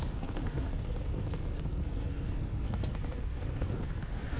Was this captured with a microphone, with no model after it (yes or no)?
no